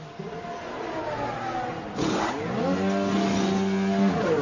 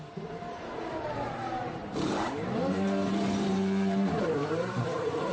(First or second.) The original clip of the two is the first